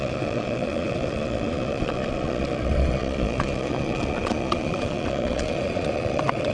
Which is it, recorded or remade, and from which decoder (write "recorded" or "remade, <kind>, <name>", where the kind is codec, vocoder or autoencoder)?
remade, vocoder, Vocos